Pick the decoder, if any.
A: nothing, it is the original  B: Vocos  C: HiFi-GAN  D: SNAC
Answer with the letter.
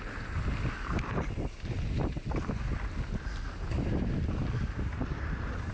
A